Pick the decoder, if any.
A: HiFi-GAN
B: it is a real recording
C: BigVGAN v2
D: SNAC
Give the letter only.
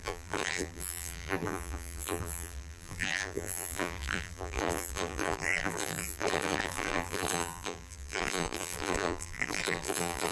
C